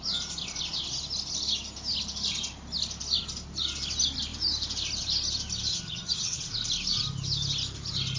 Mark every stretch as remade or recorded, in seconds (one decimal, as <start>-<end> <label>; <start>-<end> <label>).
0.0-5.7 recorded; 5.7-6.5 remade; 6.5-8.2 recorded